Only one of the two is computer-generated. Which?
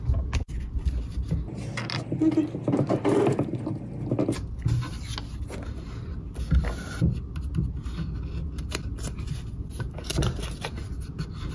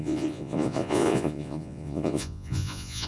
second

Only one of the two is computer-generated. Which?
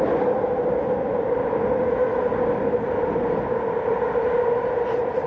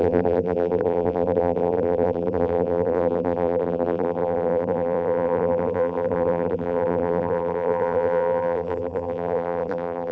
second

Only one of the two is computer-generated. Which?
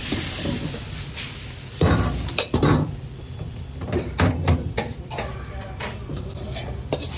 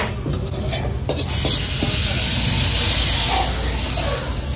first